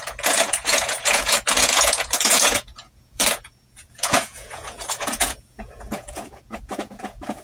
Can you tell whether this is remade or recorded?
remade